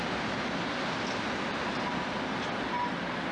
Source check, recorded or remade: recorded